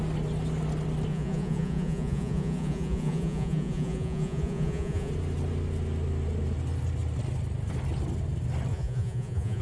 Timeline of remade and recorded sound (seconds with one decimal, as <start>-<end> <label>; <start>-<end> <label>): 0.0-1.1 recorded; 1.1-5.1 remade; 5.1-8.7 recorded; 8.7-9.6 remade